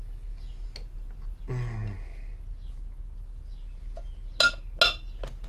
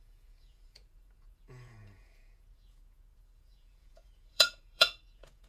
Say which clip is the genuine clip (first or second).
first